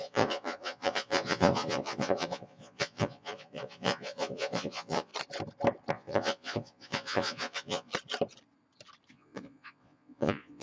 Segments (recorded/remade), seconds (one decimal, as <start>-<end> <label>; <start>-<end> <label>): 0.0-5.1 remade; 5.1-5.9 recorded; 5.9-7.9 remade; 7.9-9.1 recorded; 9.1-10.6 remade